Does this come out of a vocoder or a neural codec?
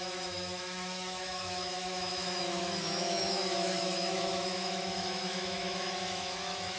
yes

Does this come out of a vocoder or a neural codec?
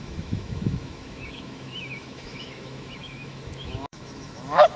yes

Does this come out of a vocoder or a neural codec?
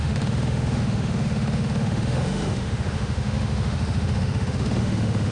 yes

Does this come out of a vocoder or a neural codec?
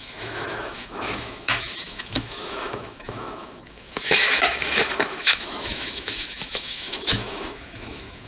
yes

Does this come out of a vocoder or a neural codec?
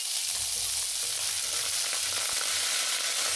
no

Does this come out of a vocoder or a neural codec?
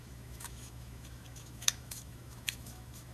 yes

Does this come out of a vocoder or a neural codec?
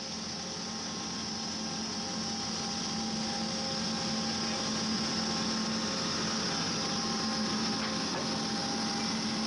no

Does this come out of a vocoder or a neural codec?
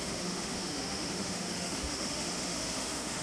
yes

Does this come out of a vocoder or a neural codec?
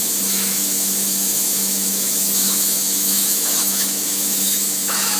yes